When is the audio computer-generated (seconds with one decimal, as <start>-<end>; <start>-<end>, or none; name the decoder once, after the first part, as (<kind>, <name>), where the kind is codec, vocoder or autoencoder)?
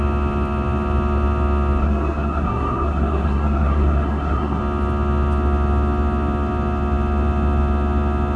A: 1.8-4.6 (codec, SNAC)